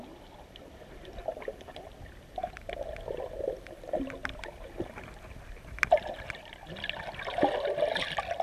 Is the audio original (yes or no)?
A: yes